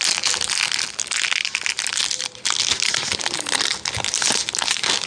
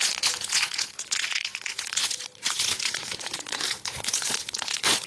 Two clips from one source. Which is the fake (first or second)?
second